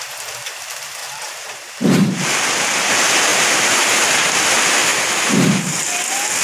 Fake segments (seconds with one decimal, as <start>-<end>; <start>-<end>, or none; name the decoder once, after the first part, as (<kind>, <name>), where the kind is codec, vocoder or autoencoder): 1.0-2.9 (vocoder, BigVGAN v2); 3.3-4.0; 4.9-5.5